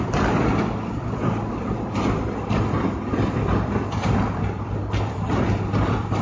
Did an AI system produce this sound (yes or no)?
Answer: yes